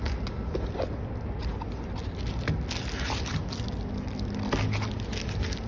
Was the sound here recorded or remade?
recorded